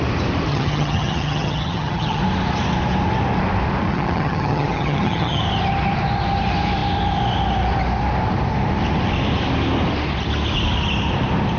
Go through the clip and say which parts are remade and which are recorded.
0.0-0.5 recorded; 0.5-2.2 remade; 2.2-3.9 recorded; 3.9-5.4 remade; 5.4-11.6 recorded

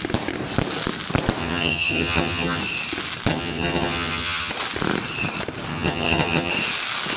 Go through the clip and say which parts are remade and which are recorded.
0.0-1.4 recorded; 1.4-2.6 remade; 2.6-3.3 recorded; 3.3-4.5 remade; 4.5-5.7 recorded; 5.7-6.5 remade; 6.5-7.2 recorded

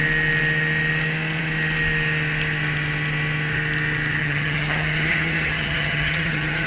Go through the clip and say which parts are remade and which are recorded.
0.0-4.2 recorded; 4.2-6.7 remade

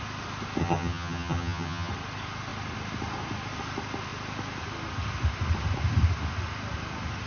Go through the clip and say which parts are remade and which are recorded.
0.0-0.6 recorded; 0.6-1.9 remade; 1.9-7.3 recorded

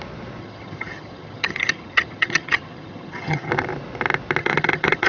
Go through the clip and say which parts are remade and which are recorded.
0.0-0.4 recorded; 0.4-3.5 remade; 3.5-4.4 recorded; 4.4-5.1 remade

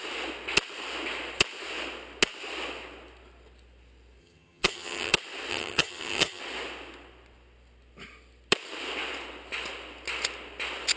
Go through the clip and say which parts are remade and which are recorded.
0.0-4.2 recorded; 4.2-5.1 remade; 5.1-5.5 recorded; 5.5-6.4 remade; 6.4-11.0 recorded

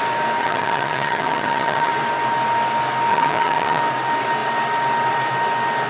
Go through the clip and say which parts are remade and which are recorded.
0.0-0.4 recorded; 0.4-1.9 remade; 1.9-3.1 recorded; 3.1-3.8 remade; 3.8-5.9 recorded

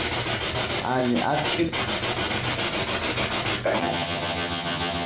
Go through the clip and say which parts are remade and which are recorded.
0.0-3.8 recorded; 3.8-5.1 remade